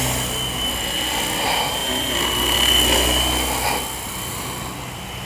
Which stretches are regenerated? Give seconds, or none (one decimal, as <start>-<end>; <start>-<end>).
none